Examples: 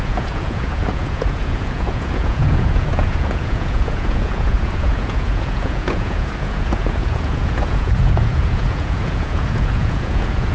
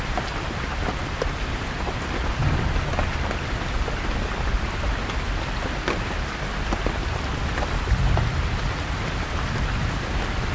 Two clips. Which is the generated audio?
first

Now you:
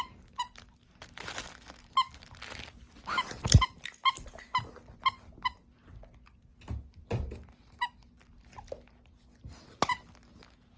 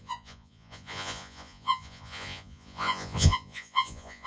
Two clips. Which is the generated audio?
second